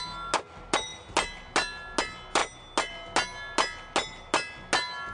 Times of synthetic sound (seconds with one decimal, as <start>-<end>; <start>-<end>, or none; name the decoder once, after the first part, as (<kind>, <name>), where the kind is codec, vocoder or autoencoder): none